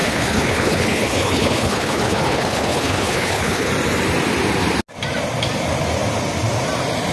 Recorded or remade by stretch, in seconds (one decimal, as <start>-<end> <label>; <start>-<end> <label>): 0.0-3.7 remade; 3.7-7.1 recorded